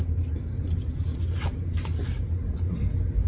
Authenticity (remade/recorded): recorded